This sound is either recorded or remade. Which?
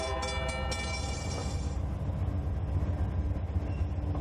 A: recorded